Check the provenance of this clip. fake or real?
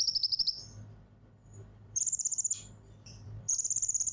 fake